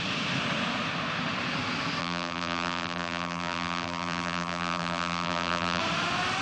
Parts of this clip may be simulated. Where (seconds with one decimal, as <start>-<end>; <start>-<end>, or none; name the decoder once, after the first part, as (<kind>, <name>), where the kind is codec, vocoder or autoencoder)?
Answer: 2.0-5.8 (vocoder, BigVGAN v2)